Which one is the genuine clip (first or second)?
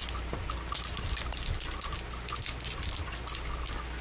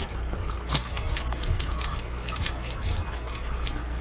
first